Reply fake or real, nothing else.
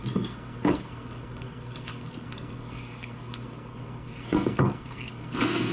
fake